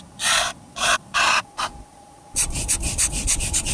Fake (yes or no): yes